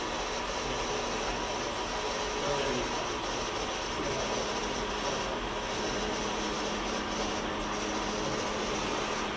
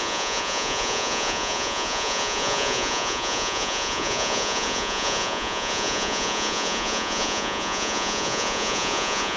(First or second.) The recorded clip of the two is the first